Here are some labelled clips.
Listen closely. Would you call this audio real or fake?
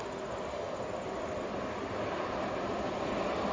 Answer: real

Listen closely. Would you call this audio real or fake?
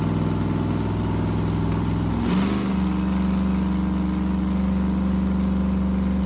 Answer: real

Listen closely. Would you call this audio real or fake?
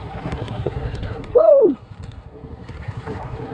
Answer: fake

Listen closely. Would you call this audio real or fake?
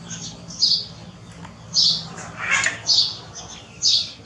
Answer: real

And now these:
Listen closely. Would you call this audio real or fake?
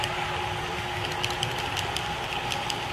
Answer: real